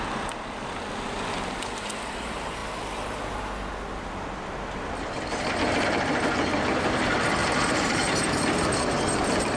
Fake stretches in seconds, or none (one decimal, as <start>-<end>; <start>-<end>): 7.4-8.5